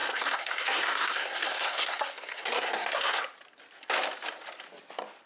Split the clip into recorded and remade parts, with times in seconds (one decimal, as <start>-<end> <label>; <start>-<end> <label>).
0.0-3.2 remade; 3.2-5.3 recorded